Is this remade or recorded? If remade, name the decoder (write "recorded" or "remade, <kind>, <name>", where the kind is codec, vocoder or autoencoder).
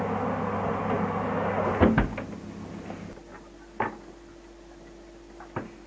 recorded